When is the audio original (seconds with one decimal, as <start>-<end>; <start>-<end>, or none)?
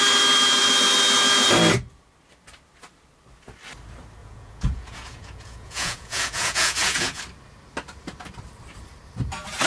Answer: 0.0-4.2; 7.2-9.7